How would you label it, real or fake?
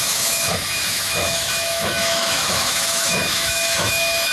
fake